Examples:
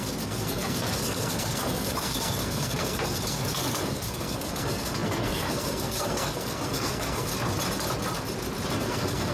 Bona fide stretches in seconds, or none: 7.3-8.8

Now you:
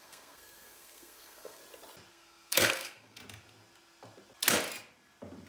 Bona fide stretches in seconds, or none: 1.6-2.1; 3.2-5.5

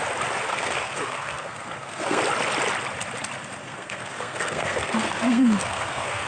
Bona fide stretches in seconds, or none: 0.0-0.5; 2.2-3.6